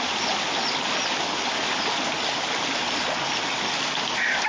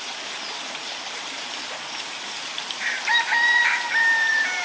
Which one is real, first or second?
first